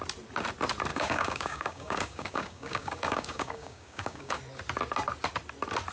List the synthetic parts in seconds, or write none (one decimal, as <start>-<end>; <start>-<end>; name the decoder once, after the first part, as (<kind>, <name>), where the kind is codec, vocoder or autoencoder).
0.9-4.4 (codec, DAC)